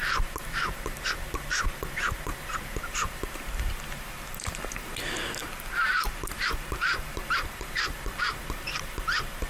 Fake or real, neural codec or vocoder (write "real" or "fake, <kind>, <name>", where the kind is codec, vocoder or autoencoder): fake, vocoder, BigVGAN v2